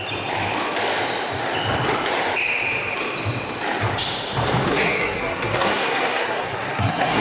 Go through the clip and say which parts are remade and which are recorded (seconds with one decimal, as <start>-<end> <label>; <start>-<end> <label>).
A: 0.0-4.7 recorded; 4.7-7.2 remade